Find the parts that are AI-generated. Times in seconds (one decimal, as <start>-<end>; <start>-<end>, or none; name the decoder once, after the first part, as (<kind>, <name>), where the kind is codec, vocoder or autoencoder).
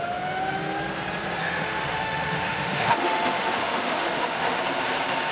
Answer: 1.4-4.6 (autoencoder, DAC-VAE)